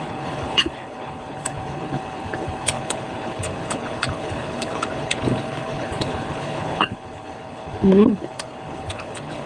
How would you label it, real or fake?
fake